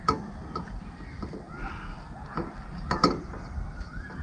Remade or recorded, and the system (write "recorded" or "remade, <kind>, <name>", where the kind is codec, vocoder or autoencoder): recorded